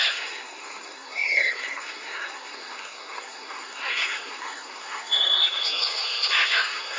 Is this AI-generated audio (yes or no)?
yes